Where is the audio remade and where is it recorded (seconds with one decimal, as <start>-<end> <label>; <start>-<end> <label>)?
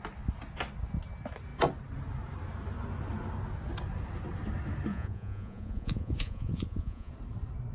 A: 0.0-4.9 recorded; 4.9-7.1 remade; 7.1-7.7 recorded